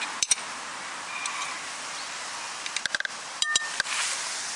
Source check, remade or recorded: recorded